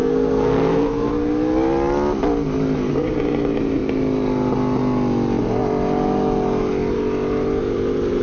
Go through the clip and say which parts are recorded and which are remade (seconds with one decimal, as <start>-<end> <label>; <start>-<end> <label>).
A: 0.0-1.1 remade; 1.1-8.2 recorded